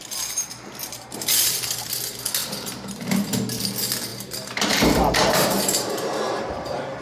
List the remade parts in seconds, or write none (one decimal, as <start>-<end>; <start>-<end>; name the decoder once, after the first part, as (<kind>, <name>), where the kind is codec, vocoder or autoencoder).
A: 0.8-1.9 (vocoder, BigVGAN v2); 2.4-3.3; 4.1-7.0